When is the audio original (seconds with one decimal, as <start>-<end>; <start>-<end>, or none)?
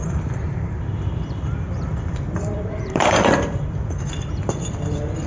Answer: 3.2-5.3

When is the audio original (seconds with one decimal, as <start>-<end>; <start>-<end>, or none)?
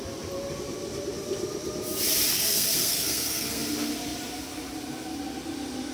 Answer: 0.0-2.3; 3.6-5.9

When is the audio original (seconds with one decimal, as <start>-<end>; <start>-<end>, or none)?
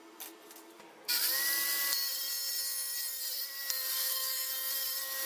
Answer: 0.0-4.0; 4.5-5.3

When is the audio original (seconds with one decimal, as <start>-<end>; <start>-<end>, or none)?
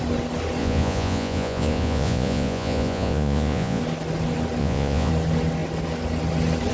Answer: 0.0-0.6; 3.8-4.6; 5.1-6.7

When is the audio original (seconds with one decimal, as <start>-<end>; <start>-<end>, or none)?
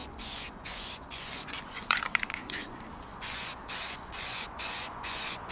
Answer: none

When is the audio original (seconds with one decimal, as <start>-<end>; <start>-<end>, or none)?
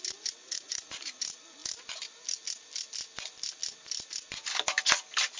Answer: 0.0-0.4; 1.2-5.4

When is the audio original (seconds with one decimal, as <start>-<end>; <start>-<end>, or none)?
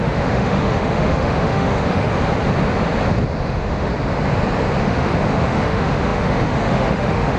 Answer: 2.1-3.4; 3.9-4.8